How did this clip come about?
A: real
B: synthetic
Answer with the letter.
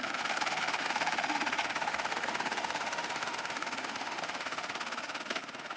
B